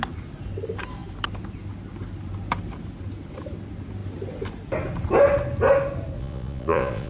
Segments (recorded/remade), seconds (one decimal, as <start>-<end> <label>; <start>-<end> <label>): 0.0-6.2 recorded; 6.2-7.1 remade